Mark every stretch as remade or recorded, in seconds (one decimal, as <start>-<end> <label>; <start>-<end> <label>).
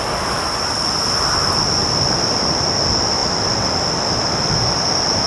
0.0-1.8 recorded; 1.8-2.6 remade; 2.6-3.2 recorded; 3.2-4.5 remade; 4.5-5.3 recorded